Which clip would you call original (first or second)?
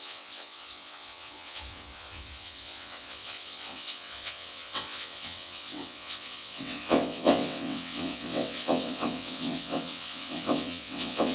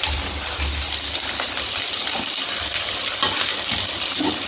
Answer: second